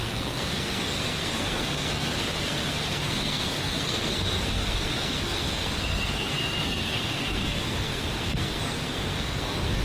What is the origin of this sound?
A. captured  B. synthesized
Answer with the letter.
B